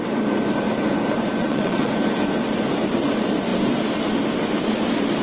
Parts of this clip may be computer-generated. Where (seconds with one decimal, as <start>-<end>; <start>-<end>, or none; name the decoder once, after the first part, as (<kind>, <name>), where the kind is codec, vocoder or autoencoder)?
1.4-1.9 (vocoder, Vocos)

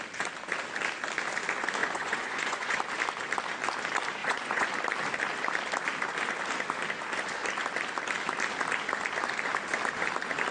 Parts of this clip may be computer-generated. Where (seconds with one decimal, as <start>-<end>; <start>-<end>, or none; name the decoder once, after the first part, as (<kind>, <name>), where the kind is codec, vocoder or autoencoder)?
1.8-2.8 (vocoder, Vocos); 4.2-4.7

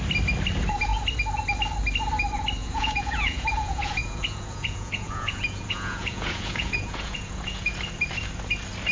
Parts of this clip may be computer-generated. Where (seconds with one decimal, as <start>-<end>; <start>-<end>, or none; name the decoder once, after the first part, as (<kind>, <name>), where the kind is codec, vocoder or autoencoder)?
2.6-7.8 (vocoder, Vocos)

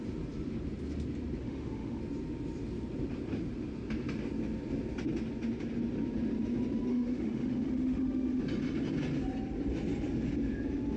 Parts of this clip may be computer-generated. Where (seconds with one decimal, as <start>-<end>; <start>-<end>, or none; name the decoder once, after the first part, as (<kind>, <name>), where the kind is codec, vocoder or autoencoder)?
1.4-2.0 (autoencoder, DAC-VAE); 6.9-8.4

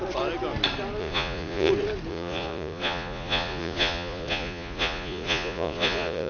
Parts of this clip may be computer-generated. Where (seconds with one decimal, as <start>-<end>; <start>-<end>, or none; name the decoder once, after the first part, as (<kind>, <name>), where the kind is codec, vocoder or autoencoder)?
1.0-1.7 (vocoder, Vocos); 2.1-6.3